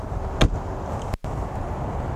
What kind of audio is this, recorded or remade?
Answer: recorded